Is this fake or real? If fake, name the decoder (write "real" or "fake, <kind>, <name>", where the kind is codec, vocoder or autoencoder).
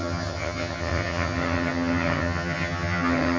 fake, vocoder, HiFi-GAN